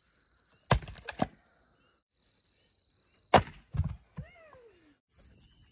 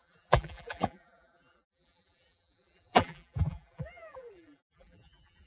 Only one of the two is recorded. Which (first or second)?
first